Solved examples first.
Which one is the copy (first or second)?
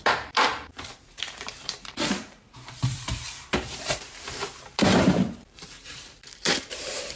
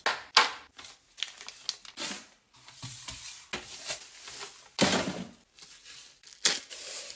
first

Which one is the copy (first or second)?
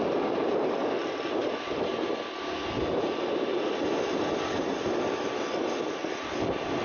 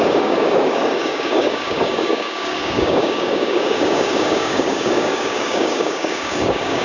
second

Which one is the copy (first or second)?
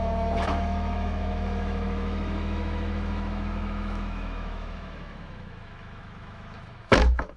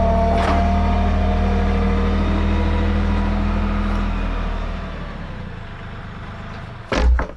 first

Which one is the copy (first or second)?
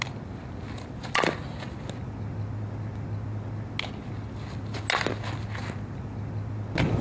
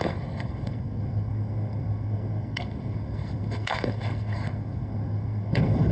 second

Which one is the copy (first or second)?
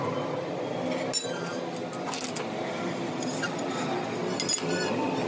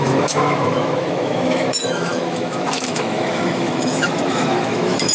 second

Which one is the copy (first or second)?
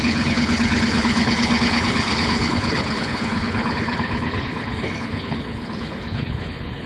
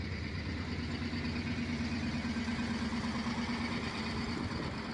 first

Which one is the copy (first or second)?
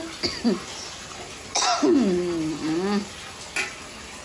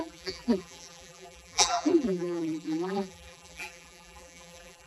second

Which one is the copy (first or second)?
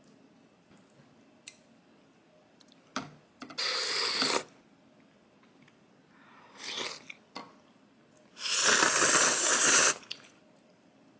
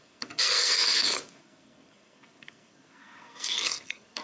second